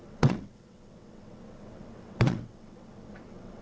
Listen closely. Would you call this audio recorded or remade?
remade